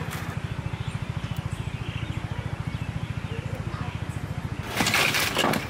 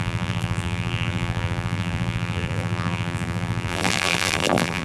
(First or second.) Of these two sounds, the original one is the first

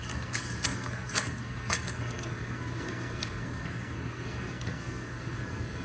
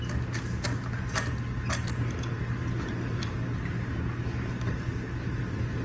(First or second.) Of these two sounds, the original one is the second